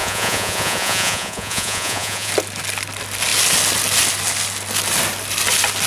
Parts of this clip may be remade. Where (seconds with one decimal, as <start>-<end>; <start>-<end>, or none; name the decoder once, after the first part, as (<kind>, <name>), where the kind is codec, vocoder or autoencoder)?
0.0-2.3 (vocoder, Vocos)